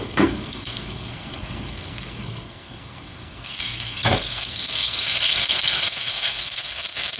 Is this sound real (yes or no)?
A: no